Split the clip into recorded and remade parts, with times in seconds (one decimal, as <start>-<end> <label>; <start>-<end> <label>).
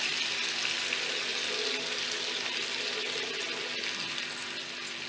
0.0-5.1 recorded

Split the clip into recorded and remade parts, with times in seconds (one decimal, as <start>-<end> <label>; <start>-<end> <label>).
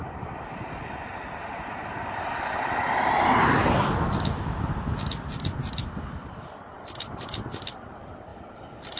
0.0-9.0 recorded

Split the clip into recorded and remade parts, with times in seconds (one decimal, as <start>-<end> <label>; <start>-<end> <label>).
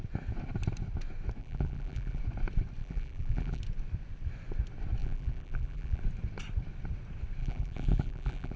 0.0-1.4 recorded; 1.4-2.2 remade; 2.2-2.8 recorded; 2.8-3.6 remade; 3.6-5.0 recorded; 5.0-6.0 remade; 6.0-7.4 recorded; 7.4-8.6 remade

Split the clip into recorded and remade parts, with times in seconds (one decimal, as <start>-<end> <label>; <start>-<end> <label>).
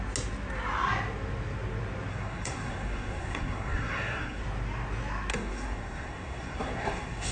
0.0-2.1 recorded; 2.1-4.4 remade; 4.4-5.3 recorded; 5.3-7.3 remade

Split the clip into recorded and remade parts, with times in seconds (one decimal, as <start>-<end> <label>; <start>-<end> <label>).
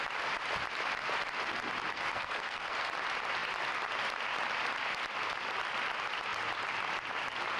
0.0-1.9 recorded; 1.9-2.9 remade; 2.9-7.6 recorded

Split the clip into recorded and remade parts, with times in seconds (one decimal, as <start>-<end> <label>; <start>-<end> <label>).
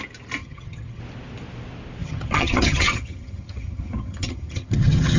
0.0-0.4 recorded; 0.4-1.0 remade; 1.0-2.0 recorded; 2.0-5.2 remade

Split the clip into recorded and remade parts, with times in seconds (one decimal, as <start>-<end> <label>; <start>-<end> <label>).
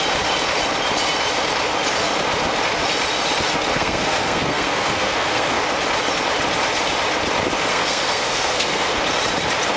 0.0-3.7 recorded; 3.7-5.6 remade; 5.6-7.7 recorded; 7.7-9.0 remade; 9.0-9.8 recorded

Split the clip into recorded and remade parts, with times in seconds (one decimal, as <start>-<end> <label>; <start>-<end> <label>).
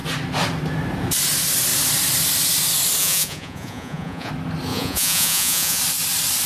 0.0-3.0 recorded; 3.0-4.3 remade; 4.3-4.7 recorded; 4.7-5.8 remade; 5.8-6.5 recorded